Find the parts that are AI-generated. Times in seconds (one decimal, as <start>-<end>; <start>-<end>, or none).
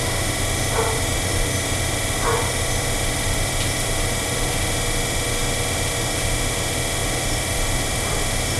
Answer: 1.1-4.6; 7.0-8.2